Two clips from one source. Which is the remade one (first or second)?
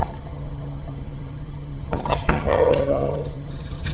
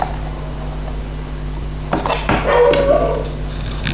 first